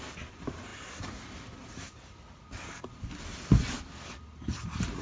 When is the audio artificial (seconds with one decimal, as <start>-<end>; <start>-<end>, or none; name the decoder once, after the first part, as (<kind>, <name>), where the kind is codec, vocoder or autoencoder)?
none